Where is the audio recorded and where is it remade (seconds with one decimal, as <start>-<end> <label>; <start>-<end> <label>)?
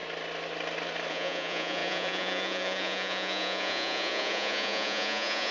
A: 0.0-1.1 recorded; 1.1-5.5 remade